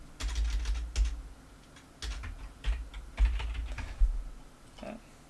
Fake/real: real